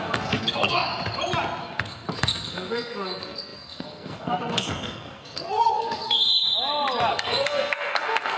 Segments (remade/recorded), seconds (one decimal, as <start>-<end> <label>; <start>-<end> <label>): 0.0-0.9 remade; 0.9-1.6 recorded; 1.6-6.3 remade; 6.3-7.1 recorded; 7.1-8.4 remade